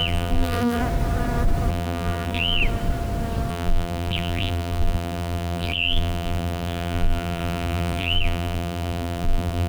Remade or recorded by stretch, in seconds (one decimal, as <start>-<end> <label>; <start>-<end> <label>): 0.0-0.8 remade; 0.8-1.7 recorded; 1.7-2.6 remade; 2.6-3.5 recorded; 3.5-9.7 remade